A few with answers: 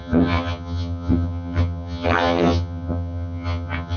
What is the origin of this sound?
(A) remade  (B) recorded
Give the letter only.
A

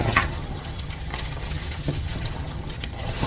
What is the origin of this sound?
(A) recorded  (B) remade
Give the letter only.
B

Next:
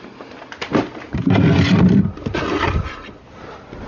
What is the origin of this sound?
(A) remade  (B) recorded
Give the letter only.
B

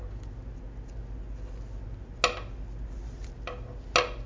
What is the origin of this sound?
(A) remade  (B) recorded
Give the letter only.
B